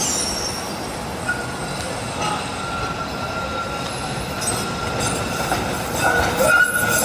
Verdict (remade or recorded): recorded